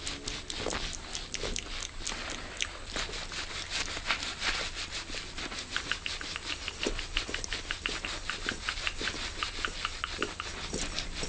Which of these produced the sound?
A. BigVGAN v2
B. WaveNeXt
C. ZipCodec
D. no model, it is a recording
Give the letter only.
D